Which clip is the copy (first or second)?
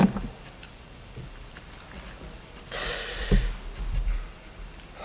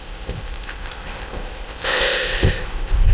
second